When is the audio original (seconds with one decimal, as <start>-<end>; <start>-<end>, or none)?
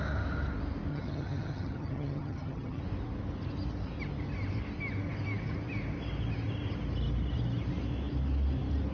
0.0-0.9; 2.8-8.9